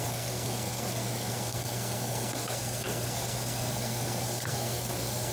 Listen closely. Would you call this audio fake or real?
fake